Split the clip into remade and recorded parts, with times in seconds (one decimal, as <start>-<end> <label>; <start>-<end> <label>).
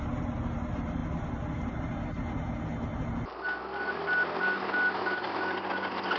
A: 0.0-6.2 recorded